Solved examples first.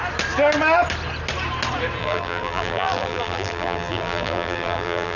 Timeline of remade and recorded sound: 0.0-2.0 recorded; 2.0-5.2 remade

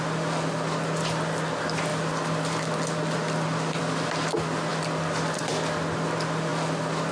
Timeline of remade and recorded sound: 0.0-7.1 recorded

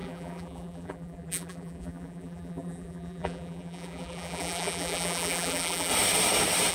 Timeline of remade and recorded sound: 0.0-5.9 remade; 5.9-6.7 recorded

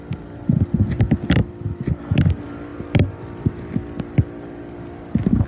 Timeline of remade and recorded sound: 0.0-1.4 recorded; 1.4-2.0 remade; 2.0-5.5 recorded

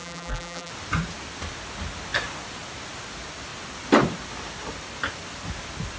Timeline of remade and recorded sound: 0.0-0.7 remade; 0.7-6.0 recorded

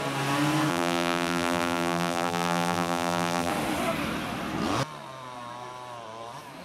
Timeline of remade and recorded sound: 0.0-0.7 recorded; 0.7-3.5 remade; 3.5-6.6 recorded